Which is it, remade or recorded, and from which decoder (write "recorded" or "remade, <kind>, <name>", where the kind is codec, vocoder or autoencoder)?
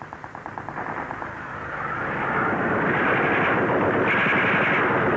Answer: recorded